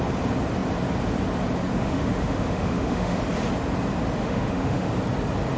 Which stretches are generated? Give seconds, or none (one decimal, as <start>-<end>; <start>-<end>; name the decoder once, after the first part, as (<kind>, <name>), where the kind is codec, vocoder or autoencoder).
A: 1.7-3.2 (autoencoder, DAC-VAE); 4.2-4.9